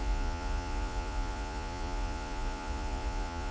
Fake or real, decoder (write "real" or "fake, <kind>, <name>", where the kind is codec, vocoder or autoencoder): fake, vocoder, Vocos